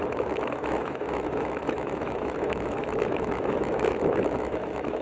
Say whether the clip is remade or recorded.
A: remade